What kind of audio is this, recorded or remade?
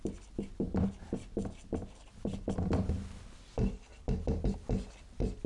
recorded